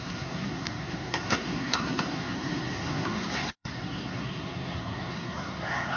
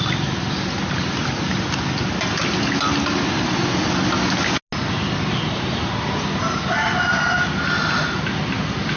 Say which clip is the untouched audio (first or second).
second